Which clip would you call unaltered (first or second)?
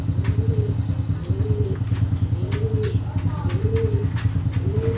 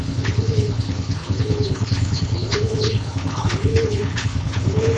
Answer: first